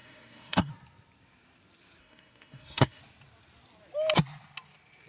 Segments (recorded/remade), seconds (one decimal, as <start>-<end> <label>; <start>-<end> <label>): 0.0-0.7 remade; 0.7-2.0 recorded; 2.0-3.0 remade; 3.0-5.1 recorded